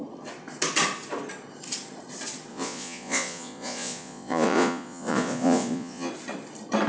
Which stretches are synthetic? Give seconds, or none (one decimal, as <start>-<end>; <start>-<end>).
2.5-6.1